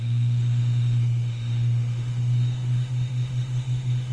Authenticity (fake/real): fake